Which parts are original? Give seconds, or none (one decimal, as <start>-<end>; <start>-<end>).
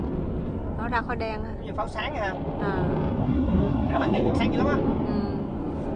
0.0-3.2; 4.4-6.0